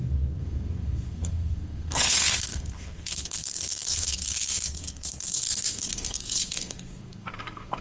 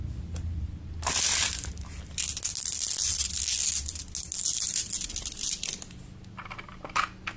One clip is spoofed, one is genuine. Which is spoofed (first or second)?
first